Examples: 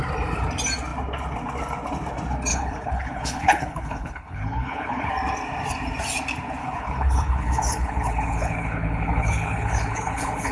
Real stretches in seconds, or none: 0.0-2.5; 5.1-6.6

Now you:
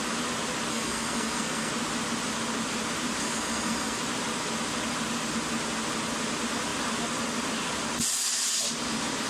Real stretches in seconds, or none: 0.0-0.7; 1.7-3.2; 4.0-9.3

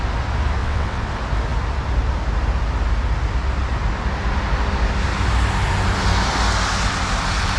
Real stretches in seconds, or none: 0.0-0.6; 1.1-7.6

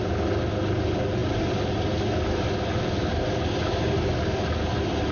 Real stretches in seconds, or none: 0.0-5.1

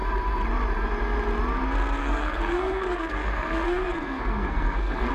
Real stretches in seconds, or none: 0.0-2.0

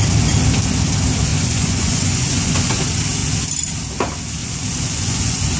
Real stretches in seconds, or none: 0.0-1.3; 2.8-4.4

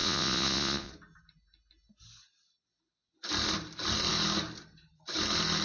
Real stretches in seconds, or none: 0.9-5.6